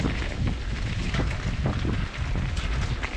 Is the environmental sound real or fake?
real